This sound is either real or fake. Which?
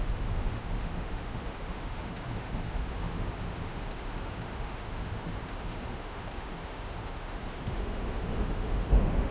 fake